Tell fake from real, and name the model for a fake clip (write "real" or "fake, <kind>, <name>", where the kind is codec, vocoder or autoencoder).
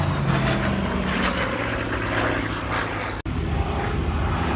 real